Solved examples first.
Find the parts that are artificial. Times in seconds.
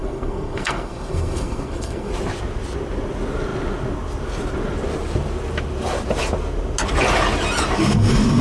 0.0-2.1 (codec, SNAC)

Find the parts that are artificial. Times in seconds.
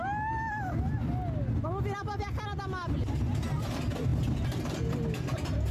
none